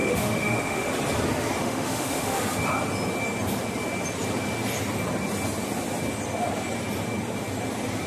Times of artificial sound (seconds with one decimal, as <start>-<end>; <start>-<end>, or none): 0.0-0.9; 1.6-2.4

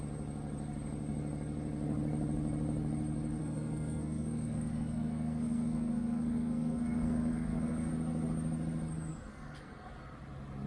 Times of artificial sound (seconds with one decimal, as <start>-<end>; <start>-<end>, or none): 3.4-7.9; 9.1-9.9

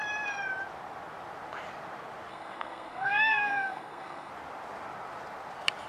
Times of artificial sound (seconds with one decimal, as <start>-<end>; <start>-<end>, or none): 2.3-4.3

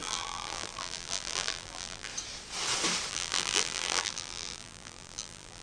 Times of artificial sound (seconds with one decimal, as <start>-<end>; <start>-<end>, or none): 0.0-2.1; 3.1-5.6